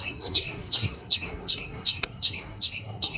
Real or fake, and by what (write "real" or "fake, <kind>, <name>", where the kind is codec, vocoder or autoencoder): fake, codec, SNAC